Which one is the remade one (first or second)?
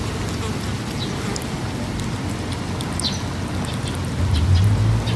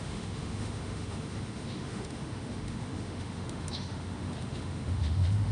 second